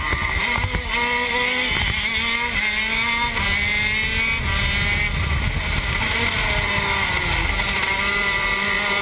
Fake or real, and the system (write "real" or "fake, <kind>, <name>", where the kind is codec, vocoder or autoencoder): real